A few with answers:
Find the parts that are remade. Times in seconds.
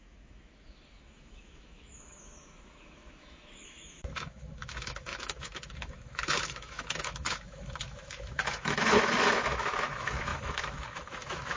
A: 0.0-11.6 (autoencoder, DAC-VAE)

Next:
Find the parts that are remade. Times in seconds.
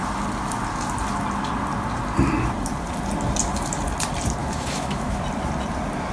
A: 4.4-5.2 (autoencoder, DAC-VAE)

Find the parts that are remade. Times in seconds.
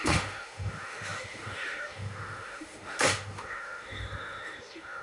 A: 0.0-5.0 (autoencoder, DAC-VAE)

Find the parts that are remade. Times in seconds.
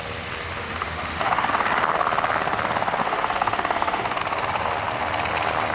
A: 0.6-1.5 (autoencoder, DAC-VAE); 3.0-4.2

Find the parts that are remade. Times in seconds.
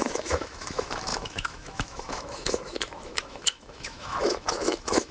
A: 0.0-5.1 (autoencoder, DAC-VAE)